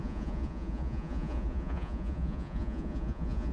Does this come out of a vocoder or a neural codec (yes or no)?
yes